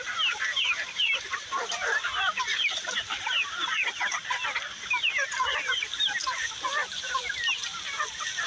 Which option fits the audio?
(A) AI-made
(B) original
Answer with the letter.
B